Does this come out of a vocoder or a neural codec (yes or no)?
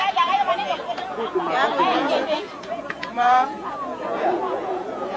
yes